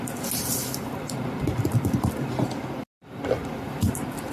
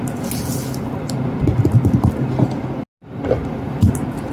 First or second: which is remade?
first